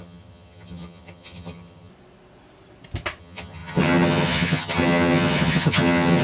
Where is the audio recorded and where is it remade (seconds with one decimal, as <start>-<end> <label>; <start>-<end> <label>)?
0.0-1.9 remade; 1.9-3.2 recorded; 3.2-6.2 remade